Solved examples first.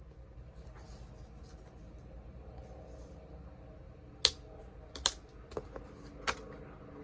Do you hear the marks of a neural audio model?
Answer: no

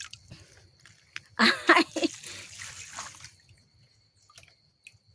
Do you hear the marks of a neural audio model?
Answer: no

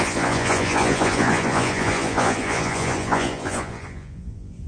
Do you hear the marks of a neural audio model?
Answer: yes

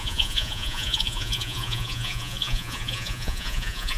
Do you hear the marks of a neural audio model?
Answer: yes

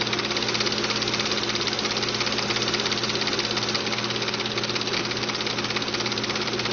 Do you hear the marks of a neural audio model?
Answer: no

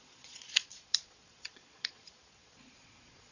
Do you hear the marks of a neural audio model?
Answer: yes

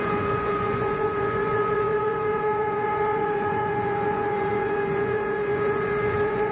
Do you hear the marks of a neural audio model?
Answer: yes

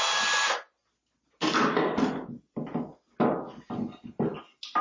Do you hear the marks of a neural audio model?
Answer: no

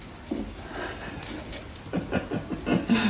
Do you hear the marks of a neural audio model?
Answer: no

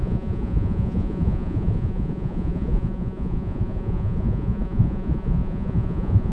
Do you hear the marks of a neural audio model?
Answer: yes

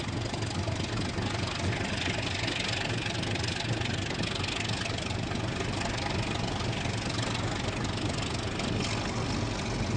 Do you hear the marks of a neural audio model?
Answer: no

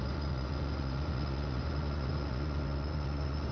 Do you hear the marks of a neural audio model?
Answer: yes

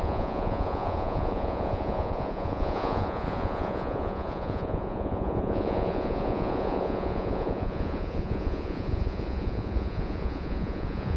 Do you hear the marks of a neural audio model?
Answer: yes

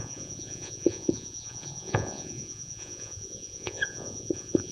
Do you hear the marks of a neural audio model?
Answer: yes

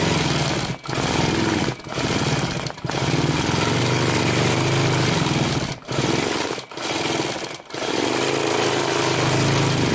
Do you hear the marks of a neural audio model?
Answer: no